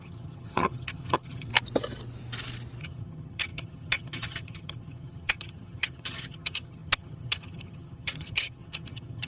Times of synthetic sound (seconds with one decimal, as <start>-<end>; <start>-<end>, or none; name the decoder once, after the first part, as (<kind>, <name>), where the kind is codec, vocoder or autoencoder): 0.0-1.5 (vocoder, HiFi-GAN); 2.8-9.3